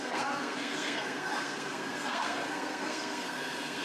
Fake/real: fake